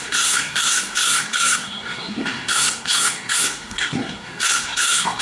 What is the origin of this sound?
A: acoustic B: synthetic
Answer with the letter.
B